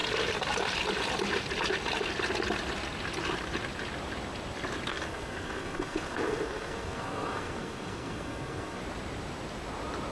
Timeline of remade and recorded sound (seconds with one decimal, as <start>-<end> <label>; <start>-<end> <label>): 0.0-4.9 recorded; 4.9-8.8 remade; 8.8-10.1 recorded